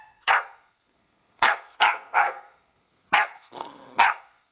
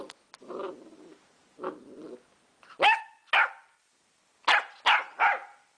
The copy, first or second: first